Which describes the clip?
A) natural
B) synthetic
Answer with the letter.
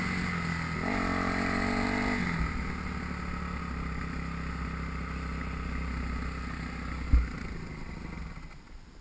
A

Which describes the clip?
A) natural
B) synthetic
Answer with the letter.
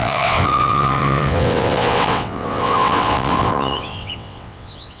B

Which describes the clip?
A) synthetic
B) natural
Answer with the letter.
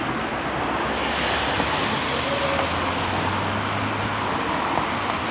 B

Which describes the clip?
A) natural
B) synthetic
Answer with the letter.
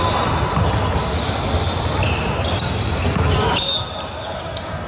A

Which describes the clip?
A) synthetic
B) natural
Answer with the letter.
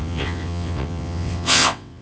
A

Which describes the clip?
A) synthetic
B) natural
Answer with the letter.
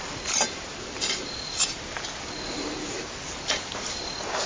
B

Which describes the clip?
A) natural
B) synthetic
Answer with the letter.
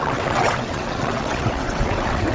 B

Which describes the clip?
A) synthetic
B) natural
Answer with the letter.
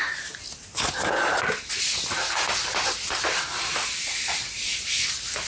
B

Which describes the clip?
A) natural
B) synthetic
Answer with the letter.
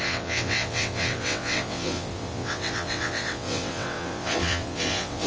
B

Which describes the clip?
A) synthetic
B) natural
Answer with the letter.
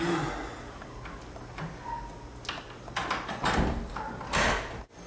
B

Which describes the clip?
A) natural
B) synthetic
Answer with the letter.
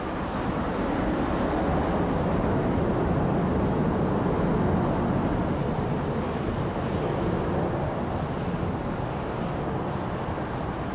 A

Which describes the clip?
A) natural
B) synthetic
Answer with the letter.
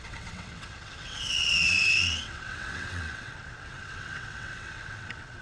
B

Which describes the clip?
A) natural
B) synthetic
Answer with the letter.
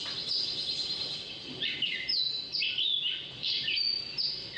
A